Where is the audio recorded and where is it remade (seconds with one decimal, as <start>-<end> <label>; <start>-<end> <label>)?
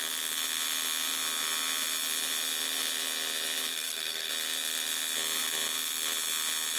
0.0-3.7 recorded; 3.7-4.3 remade; 4.3-6.8 recorded